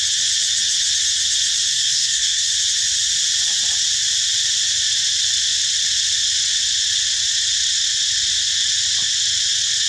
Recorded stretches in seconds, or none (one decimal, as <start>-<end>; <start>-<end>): 0.0-1.7; 2.5-9.9